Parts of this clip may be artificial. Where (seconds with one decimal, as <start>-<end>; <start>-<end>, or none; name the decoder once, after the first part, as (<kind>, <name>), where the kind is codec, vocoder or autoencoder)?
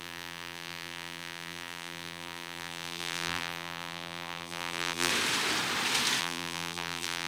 0.0-5.1 (vocoder, BigVGAN v2); 6.2-7.3